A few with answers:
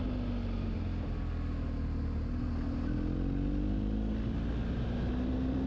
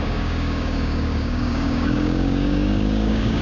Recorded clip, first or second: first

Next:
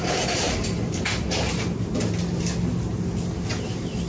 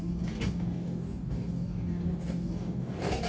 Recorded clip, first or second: first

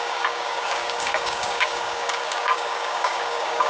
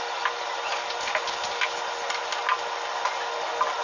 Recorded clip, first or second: second